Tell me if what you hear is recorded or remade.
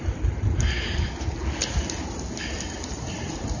recorded